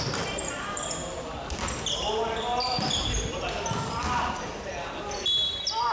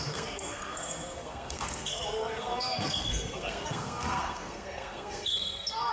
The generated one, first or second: second